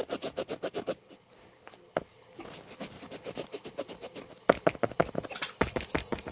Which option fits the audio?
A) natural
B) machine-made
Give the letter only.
A